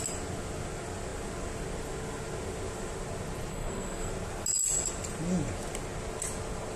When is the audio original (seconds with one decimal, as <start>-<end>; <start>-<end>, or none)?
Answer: 0.0-3.5; 4.1-6.8